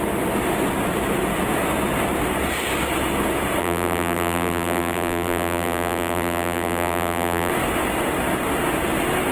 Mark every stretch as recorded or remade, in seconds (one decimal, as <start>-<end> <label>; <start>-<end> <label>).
0.0-3.6 recorded; 3.6-7.5 remade; 7.5-9.3 recorded